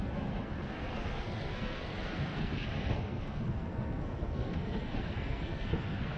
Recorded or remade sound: remade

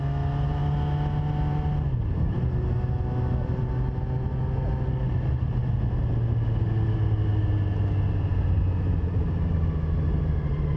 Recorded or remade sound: recorded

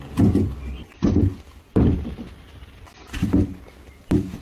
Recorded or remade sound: recorded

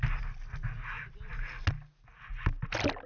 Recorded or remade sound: recorded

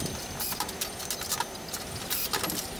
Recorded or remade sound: recorded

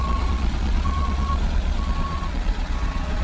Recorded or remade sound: remade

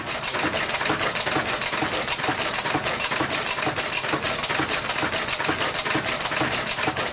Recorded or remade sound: recorded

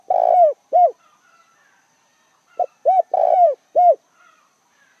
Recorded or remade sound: remade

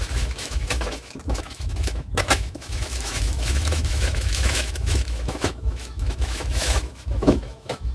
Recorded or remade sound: remade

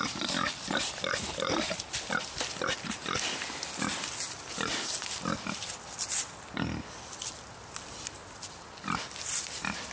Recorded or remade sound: recorded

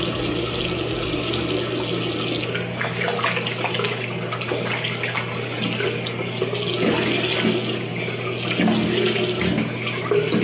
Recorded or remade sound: recorded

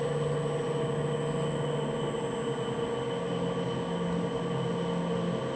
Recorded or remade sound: recorded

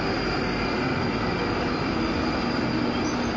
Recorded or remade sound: recorded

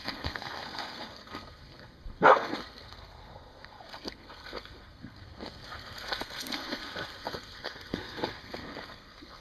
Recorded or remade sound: remade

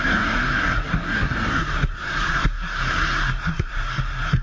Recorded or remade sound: remade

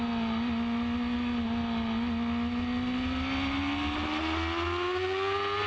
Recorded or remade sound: recorded